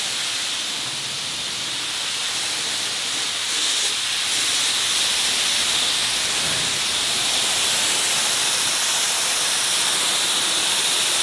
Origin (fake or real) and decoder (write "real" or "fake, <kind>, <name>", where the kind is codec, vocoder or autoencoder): real